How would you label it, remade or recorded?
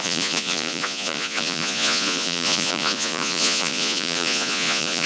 remade